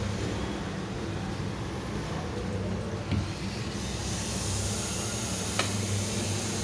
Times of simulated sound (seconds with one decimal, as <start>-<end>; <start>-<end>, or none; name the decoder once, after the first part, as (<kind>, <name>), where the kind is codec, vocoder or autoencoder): none